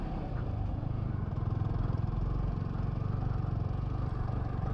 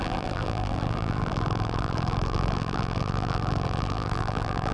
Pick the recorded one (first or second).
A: first